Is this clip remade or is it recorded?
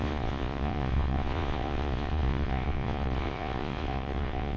remade